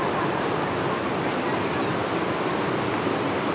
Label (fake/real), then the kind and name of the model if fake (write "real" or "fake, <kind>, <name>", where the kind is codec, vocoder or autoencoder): real